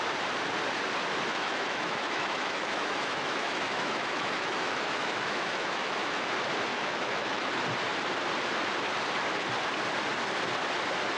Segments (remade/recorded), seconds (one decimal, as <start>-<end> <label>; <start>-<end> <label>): 0.0-1.3 recorded; 1.3-6.3 remade; 6.3-6.7 recorded; 6.7-7.5 remade; 7.5-11.2 recorded